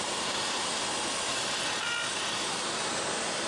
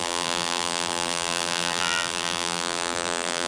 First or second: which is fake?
second